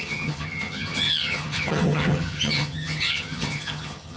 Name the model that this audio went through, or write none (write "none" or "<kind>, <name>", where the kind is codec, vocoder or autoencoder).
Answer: vocoder, HiFi-GAN